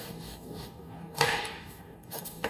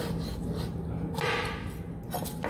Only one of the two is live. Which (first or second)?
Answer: second